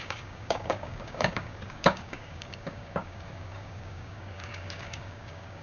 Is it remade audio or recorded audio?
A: remade